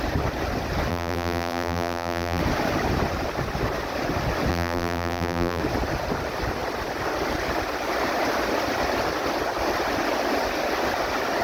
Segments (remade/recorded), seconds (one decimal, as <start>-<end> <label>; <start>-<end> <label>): 0.0-0.9 recorded; 0.9-2.4 remade; 2.4-4.5 recorded; 4.5-5.6 remade; 5.6-11.4 recorded